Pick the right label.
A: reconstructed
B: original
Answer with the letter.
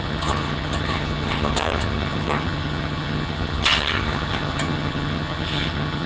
A